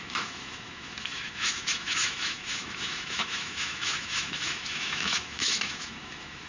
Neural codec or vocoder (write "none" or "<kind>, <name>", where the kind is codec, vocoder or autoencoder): autoencoder, DAC-VAE